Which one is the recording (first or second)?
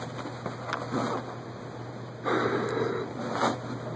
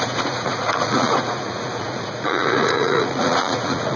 first